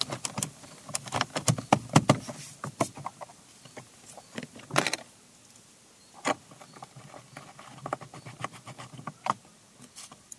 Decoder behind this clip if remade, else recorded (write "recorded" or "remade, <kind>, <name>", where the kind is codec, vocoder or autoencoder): recorded